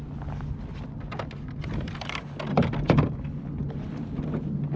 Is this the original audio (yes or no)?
yes